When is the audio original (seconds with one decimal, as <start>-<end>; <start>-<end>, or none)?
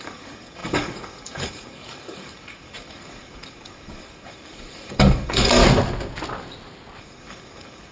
5.6-7.0